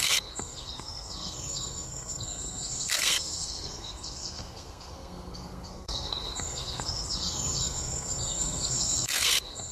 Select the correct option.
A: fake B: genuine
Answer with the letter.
A